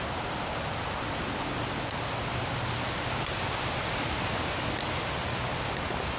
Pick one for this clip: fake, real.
real